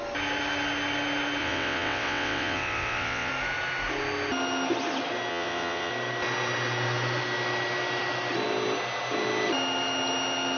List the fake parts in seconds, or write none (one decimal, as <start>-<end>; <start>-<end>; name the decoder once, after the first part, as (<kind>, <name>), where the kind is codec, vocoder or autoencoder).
1.4-3.3 (vocoder, WaveNeXt); 5.3-5.9